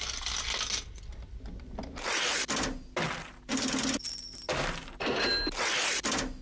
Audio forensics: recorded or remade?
recorded